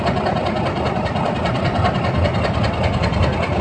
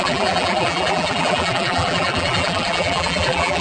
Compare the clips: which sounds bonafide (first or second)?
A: first